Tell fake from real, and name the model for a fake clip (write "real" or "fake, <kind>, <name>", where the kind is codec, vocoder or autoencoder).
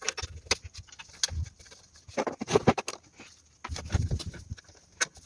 real